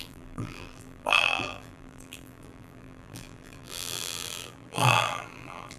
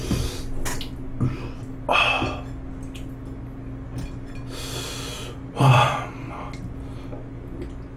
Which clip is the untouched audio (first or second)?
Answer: second